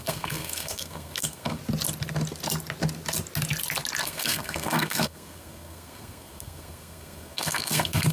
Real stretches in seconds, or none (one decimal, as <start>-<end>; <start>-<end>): 1.6-4.0